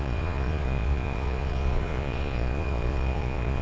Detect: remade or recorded remade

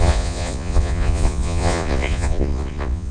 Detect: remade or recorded remade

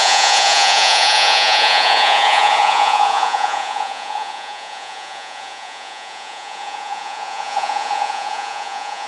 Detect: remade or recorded remade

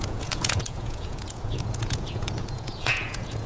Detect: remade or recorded remade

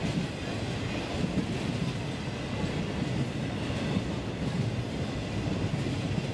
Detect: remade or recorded recorded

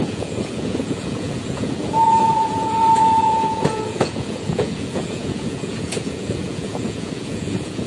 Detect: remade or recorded remade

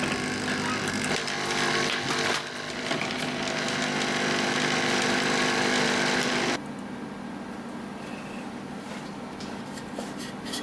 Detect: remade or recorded recorded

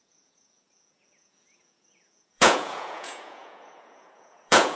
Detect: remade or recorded remade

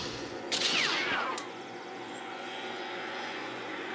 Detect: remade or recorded remade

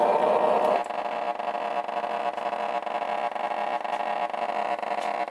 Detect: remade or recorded recorded